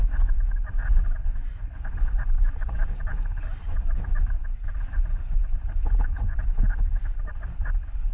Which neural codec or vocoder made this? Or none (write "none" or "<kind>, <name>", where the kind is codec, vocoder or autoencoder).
none